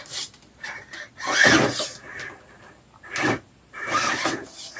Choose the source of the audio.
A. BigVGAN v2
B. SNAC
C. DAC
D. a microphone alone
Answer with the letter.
D